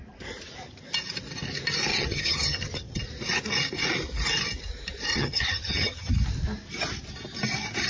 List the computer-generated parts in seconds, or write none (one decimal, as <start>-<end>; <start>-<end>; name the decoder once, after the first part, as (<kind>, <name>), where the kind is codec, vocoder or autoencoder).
1.9-3.0 (vocoder, HiFi-GAN); 5.1-6.1